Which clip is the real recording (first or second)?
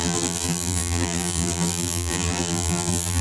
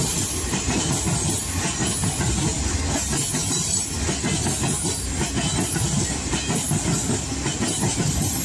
second